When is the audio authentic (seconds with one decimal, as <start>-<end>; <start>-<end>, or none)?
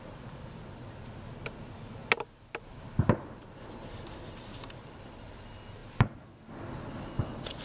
0.0-7.6